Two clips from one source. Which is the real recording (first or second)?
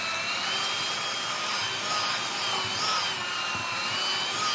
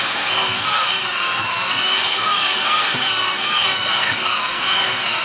first